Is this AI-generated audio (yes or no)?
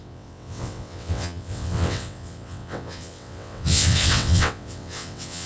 yes